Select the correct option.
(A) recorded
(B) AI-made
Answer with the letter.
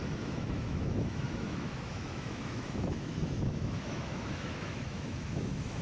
B